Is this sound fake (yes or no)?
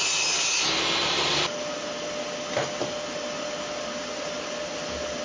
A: no